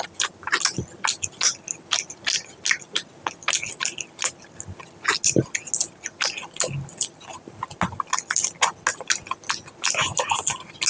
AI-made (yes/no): no